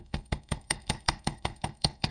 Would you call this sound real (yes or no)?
no